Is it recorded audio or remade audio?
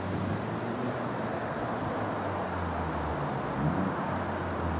recorded